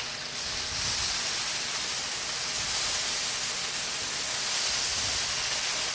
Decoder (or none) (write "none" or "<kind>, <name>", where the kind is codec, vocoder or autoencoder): none